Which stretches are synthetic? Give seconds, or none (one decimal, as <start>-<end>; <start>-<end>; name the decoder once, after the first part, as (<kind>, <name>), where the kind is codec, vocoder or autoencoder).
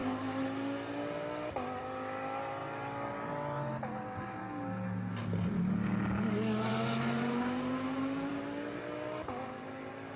none